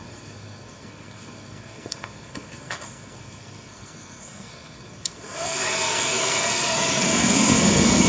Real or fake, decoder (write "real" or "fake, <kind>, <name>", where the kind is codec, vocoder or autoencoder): fake, codec, SNAC